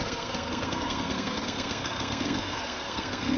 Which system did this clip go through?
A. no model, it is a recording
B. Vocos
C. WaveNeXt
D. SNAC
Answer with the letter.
D